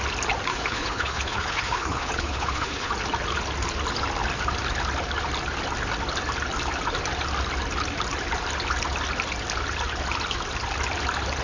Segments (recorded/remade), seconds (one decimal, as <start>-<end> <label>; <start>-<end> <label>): 0.0-0.5 recorded; 0.5-2.9 remade; 2.9-11.4 recorded